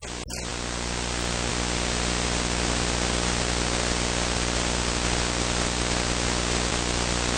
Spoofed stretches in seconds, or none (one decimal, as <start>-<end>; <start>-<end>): none

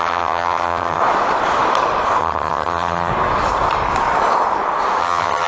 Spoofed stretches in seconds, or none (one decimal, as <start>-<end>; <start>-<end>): 0.0-1.0; 2.2-3.1; 5.0-5.5

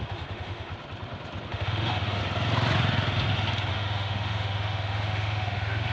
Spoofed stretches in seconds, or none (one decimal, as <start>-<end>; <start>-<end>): 0.0-0.7; 1.5-2.2; 3.7-5.9

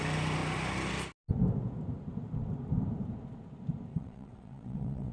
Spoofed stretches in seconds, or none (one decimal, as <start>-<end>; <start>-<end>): 3.9-5.1